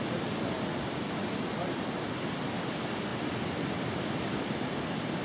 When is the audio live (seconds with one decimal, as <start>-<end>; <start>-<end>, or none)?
0.0-5.2